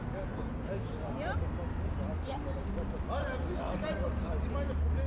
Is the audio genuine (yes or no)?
yes